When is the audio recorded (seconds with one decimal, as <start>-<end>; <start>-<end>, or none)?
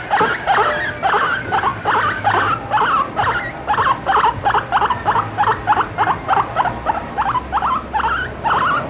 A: 0.0-8.9